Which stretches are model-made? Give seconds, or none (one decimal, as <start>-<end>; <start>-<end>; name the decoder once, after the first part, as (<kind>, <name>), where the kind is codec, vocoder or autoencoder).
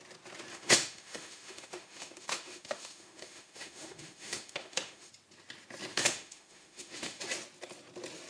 0.5-5.1 (autoencoder, DAC-VAE); 5.9-7.2